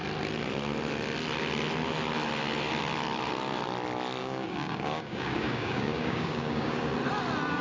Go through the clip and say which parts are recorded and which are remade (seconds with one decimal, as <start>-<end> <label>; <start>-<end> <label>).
0.0-4.2 recorded; 4.2-6.9 remade; 6.9-7.6 recorded